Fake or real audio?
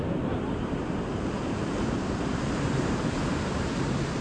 fake